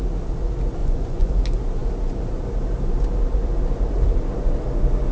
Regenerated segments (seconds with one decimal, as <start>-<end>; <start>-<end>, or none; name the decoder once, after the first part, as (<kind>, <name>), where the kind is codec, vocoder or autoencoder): 0.8-1.3 (vocoder, Vocos)